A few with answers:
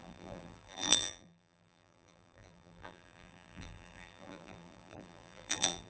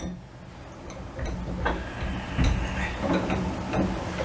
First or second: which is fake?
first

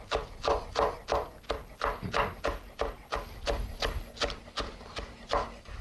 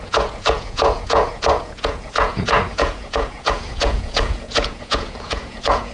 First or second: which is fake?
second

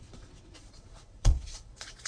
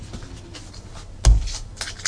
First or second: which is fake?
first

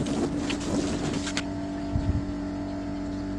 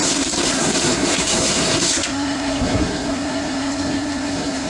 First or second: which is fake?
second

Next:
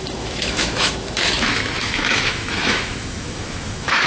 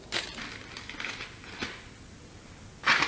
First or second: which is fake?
first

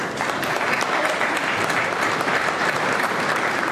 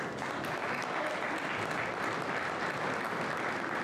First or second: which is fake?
first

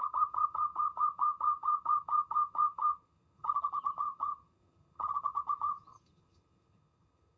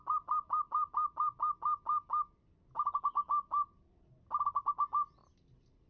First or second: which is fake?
first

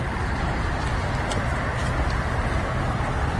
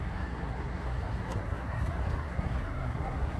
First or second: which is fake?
second